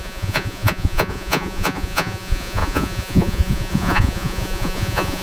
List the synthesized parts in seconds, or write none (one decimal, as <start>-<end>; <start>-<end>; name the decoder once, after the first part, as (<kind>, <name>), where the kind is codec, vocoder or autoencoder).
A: 0.0-5.2 (vocoder, Vocos)